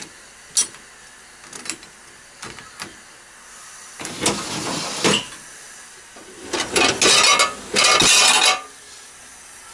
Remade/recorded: recorded